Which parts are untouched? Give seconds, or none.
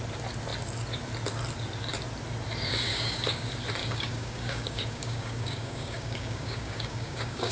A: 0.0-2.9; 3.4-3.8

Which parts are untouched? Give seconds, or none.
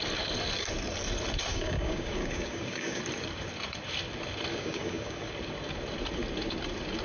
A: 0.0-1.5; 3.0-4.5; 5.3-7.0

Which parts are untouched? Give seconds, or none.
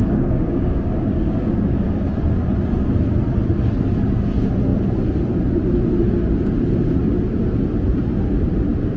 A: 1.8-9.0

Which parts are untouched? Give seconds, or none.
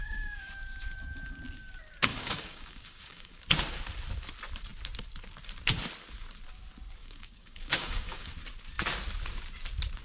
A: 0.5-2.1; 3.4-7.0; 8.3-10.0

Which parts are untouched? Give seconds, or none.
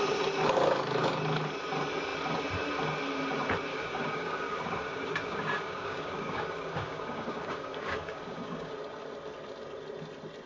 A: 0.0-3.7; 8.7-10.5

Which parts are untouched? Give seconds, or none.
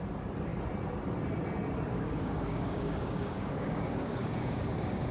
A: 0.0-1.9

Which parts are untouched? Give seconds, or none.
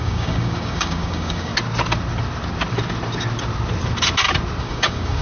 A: 1.5-4.6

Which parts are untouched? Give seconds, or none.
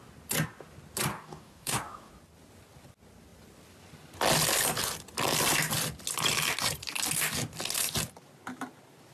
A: 0.0-1.1; 2.1-9.1